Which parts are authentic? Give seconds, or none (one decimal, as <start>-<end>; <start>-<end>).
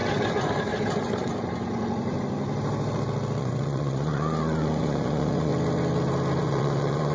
0.0-3.4; 5.5-6.4